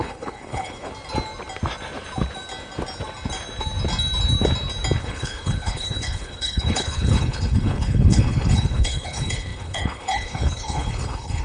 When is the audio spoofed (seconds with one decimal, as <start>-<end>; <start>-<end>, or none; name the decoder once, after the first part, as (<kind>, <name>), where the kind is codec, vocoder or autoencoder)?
0.0-0.9 (codec, HILCodec); 5.0-11.4